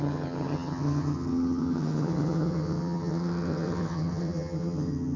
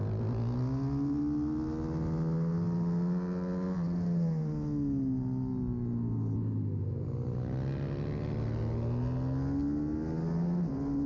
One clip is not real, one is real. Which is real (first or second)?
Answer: second